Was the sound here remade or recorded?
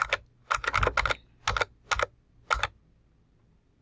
recorded